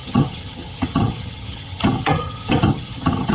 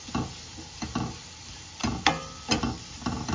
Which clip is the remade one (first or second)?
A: first